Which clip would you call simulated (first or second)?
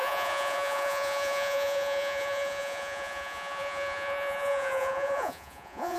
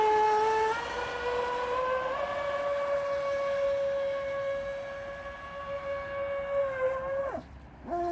first